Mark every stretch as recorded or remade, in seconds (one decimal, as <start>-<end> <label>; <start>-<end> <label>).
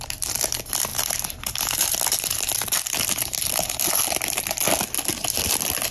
0.0-5.9 recorded